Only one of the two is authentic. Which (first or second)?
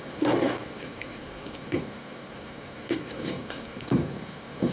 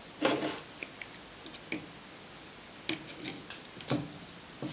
second